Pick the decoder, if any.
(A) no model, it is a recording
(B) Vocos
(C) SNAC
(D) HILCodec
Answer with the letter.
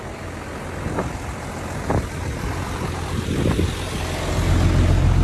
A